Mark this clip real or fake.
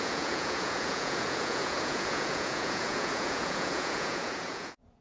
fake